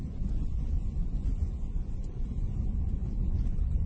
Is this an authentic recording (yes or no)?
no